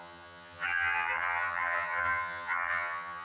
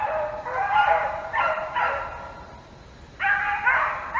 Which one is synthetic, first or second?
first